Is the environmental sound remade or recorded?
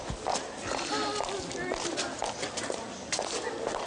recorded